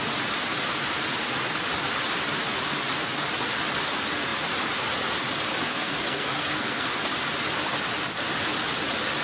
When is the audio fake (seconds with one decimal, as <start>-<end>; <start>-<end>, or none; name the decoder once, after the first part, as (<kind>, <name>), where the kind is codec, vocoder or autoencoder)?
5.7-6.9 (codec, SNAC)